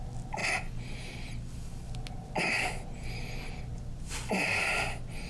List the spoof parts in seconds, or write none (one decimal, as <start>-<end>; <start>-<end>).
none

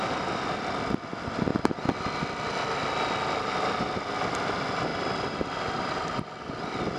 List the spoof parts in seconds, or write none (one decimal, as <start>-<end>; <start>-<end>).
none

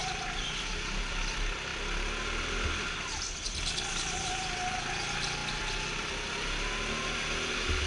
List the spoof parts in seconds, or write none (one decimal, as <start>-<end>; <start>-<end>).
none

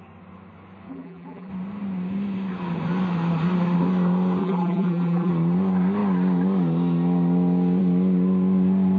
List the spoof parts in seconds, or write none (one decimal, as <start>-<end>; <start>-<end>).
0.9-1.5; 4.4-5.3

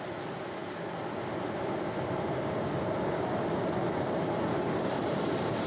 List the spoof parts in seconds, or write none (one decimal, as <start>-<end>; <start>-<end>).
none